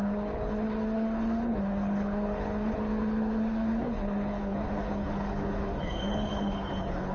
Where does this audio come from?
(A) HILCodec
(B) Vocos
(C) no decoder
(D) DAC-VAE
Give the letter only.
A